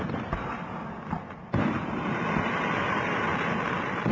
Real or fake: real